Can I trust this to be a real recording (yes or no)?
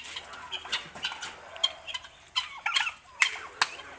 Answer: yes